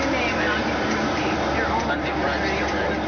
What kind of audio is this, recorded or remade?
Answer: recorded